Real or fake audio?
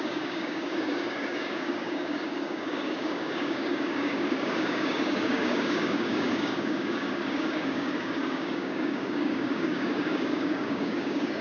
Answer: fake